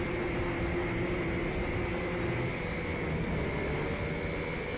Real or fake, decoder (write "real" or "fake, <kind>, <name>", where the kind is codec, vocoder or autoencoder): real